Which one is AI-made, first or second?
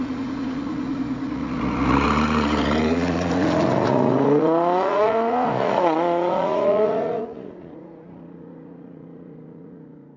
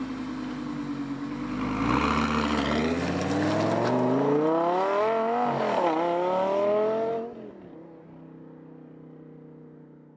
first